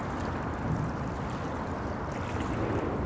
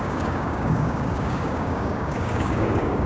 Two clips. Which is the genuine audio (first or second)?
first